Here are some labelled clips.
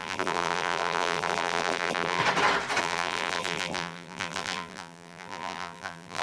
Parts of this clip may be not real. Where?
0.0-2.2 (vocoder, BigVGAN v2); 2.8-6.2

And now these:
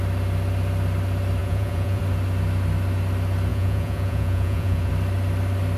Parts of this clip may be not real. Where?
1.4-2.0 (vocoder, Vocos); 3.5-4.9

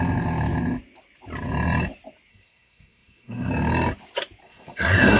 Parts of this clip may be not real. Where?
2.3-3.5 (codec, SNAC); 4.4-5.2